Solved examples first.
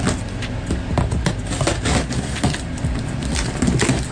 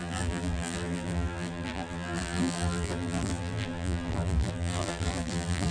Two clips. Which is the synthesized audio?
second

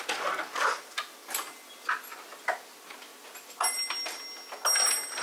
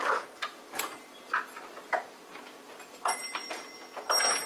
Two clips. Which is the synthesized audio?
second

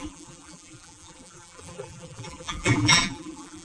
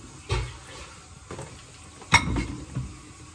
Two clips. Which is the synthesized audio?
first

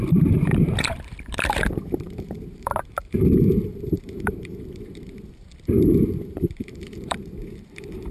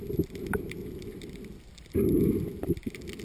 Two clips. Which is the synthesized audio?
first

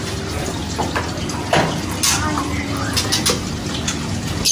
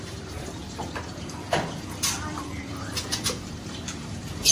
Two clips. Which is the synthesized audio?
second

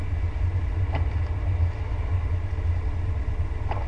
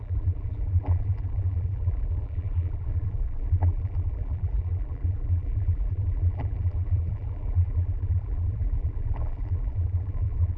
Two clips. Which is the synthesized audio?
second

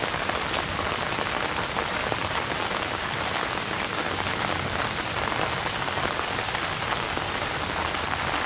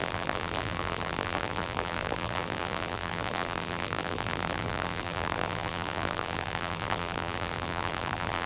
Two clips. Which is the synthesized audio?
second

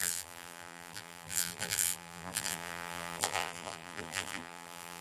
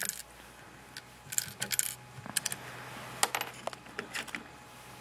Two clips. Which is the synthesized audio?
first